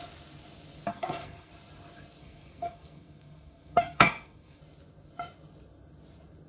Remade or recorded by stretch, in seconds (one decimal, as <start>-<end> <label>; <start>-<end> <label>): 0.0-0.9 recorded; 0.9-1.5 remade; 1.5-2.2 recorded; 2.2-4.6 remade; 4.6-6.5 recorded